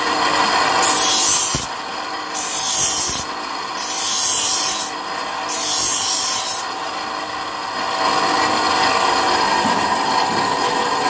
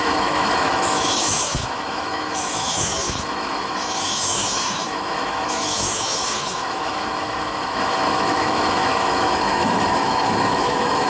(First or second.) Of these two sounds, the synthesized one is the second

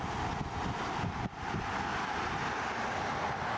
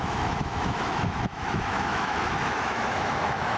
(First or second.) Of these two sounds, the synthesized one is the second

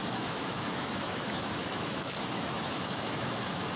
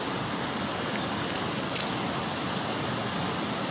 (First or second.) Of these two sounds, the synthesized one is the first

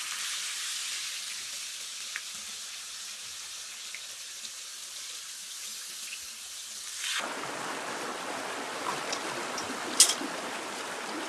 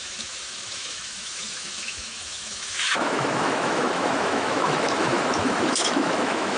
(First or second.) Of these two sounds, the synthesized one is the second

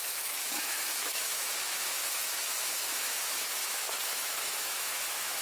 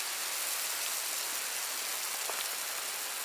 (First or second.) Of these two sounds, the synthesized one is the first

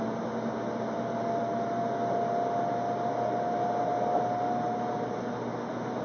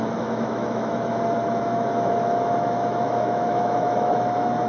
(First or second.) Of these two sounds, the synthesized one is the second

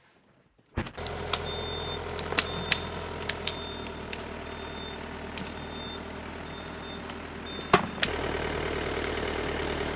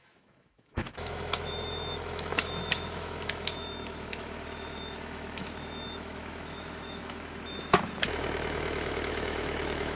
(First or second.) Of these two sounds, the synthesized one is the second